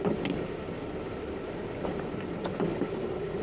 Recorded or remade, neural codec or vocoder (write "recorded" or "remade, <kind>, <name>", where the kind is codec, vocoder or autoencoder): recorded